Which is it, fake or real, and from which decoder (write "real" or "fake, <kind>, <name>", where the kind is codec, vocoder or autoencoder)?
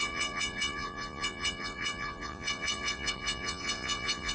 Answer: fake, vocoder, Vocos